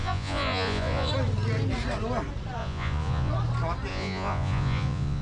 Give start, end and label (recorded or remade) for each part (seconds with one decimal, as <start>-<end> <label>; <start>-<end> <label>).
0.0-1.1 remade; 1.1-2.6 recorded; 2.6-3.3 remade; 3.3-3.9 recorded; 3.9-5.2 remade